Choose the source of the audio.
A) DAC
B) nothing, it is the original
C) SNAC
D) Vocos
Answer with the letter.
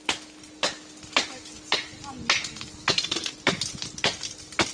B